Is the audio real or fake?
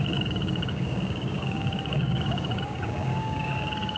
fake